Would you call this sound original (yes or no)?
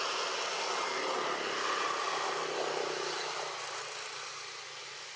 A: yes